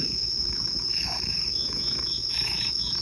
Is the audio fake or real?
fake